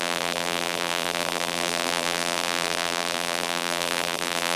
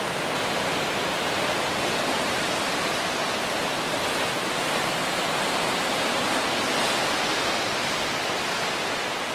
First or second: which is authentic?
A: second